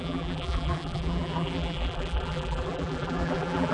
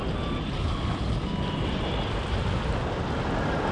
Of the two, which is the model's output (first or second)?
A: first